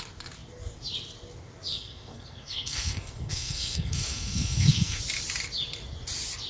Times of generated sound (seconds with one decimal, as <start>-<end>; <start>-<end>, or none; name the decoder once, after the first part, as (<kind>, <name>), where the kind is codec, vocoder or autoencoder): 1.7-5.0 (codec, SNAC)